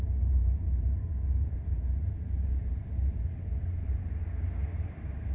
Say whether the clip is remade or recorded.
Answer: remade